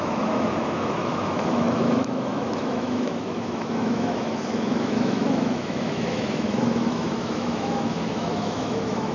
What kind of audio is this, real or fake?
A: fake